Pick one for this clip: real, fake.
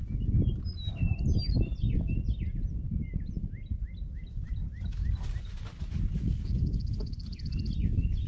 real